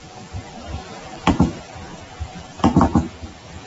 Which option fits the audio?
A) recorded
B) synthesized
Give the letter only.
B